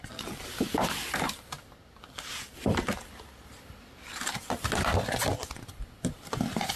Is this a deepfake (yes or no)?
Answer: no